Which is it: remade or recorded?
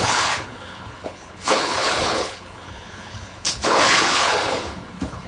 remade